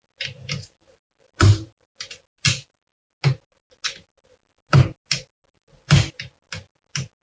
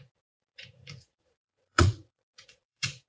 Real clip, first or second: first